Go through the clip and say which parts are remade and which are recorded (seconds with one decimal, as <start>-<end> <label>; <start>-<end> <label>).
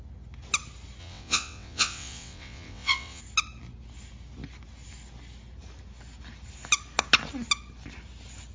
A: 0.0-1.0 recorded; 1.0-3.2 remade; 3.2-8.5 recorded